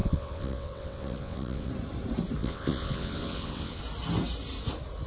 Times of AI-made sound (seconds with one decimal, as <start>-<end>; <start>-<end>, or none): 0.0-1.7; 2.4-3.8